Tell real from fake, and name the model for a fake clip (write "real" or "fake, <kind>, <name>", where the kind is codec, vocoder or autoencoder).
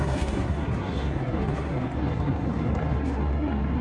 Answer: fake, codec, SNAC